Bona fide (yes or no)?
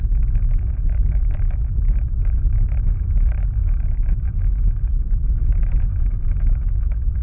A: no